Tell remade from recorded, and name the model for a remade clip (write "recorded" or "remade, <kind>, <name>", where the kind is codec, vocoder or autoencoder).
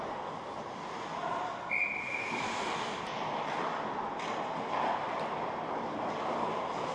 recorded